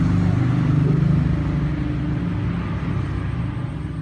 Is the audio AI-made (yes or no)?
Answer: no